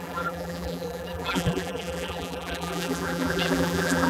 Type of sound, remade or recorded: remade